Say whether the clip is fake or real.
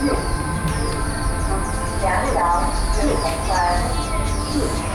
real